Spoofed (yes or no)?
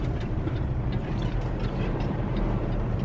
yes